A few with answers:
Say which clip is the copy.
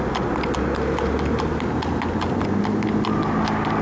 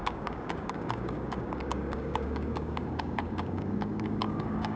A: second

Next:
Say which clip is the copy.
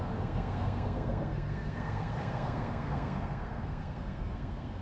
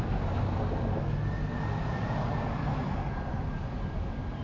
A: first